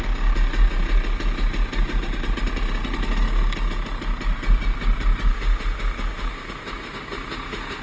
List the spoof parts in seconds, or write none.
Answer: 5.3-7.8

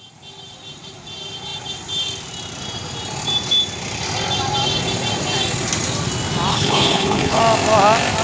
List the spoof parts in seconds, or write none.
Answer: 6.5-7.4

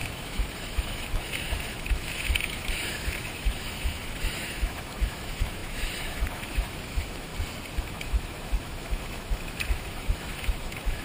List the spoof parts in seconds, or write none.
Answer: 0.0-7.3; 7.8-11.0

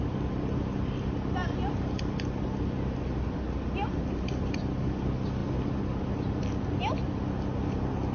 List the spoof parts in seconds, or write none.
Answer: none

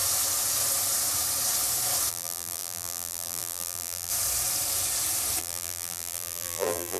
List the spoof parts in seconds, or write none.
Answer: 2.1-4.1; 5.4-7.0

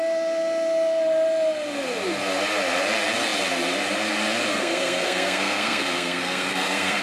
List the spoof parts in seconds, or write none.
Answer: 4.5-7.0